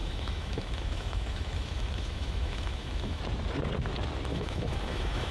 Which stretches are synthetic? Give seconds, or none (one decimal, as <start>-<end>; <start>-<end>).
0.0-3.2; 4.3-5.3